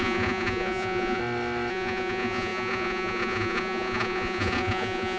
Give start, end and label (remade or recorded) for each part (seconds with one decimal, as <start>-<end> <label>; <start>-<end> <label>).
0.0-1.2 remade; 1.2-1.7 recorded; 1.7-5.2 remade